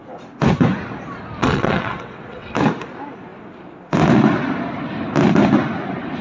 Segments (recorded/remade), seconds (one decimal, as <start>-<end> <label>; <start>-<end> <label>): 0.0-1.4 recorded; 1.4-2.5 remade; 2.5-6.2 recorded